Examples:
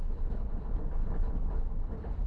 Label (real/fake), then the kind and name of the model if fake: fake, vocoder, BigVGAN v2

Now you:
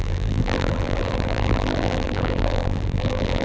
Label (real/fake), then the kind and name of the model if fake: fake, vocoder, BigVGAN v2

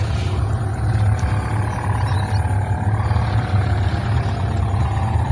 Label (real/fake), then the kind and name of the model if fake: real